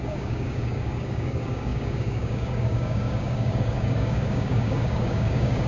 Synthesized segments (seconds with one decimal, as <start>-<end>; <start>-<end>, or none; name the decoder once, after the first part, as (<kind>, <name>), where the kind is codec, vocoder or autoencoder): 0.0-5.7 (codec, DAC)